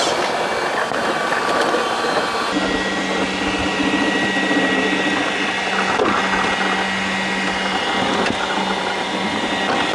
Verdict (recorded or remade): recorded